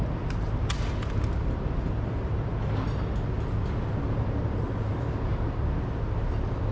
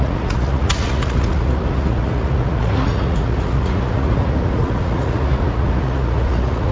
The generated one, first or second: second